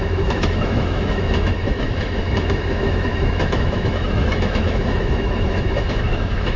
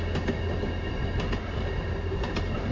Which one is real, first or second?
second